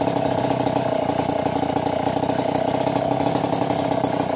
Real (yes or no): yes